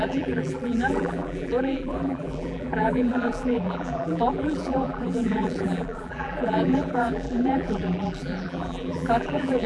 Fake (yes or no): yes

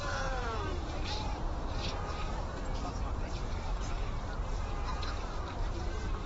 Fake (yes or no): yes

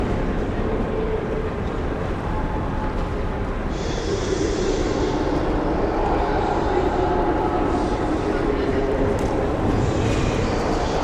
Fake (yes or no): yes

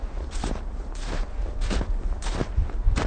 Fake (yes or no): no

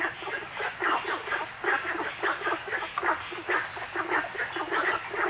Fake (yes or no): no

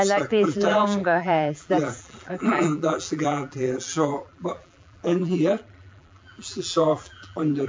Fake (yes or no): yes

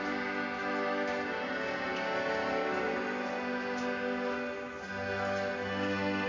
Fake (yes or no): no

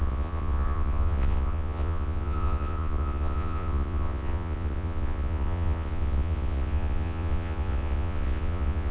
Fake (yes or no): yes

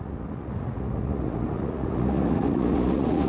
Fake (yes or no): yes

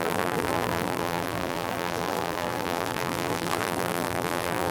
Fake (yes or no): yes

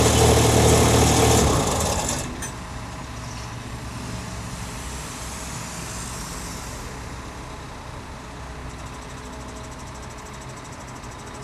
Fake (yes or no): no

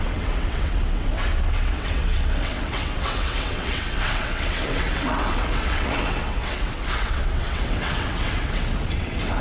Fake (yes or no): yes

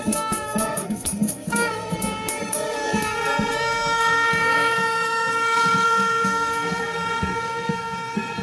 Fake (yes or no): yes